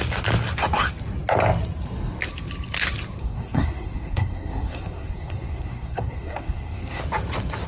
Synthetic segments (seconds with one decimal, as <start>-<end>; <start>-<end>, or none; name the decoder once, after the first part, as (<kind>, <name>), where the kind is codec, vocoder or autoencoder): 3.2-7.0 (codec, SNAC)